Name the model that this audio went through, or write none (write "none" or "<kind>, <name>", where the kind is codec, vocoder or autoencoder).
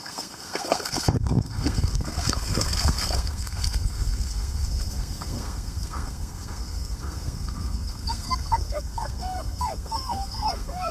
codec, SNAC